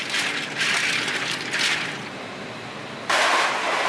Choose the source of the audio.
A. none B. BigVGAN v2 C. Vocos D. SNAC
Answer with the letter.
A